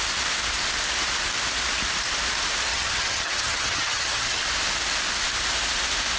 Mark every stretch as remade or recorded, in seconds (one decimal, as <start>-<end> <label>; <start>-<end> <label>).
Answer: 0.0-2.7 recorded; 2.7-4.4 remade; 4.4-6.2 recorded